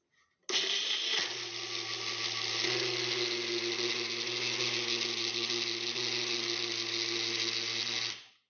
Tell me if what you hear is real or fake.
real